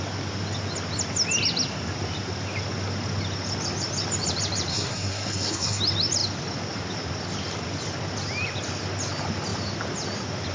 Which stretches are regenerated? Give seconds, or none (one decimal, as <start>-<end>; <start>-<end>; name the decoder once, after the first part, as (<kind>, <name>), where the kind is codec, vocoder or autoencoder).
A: 4.7-5.8 (codec, SNAC)

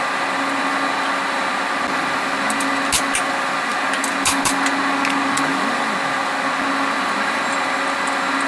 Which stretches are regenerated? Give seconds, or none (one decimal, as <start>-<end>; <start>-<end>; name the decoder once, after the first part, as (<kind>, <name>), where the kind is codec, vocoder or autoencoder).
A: none

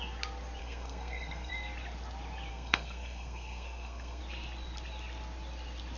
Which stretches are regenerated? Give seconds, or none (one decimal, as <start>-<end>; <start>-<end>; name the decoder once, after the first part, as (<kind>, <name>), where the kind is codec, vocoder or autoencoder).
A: 0.6-1.5 (codec, SNAC); 2.5-4.2

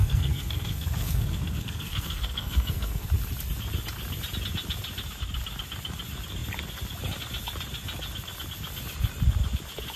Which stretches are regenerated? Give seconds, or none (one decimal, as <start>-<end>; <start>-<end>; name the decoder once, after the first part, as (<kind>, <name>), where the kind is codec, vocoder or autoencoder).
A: 0.0-3.1 (codec, SNAC)

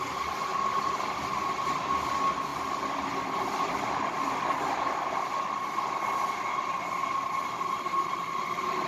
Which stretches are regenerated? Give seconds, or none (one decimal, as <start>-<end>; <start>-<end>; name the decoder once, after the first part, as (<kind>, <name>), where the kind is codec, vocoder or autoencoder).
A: none

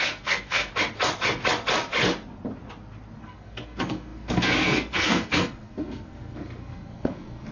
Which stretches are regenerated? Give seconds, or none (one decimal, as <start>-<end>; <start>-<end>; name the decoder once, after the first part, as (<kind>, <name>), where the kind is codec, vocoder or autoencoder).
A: 0.0-0.7 (codec, SNAC); 3.2-7.5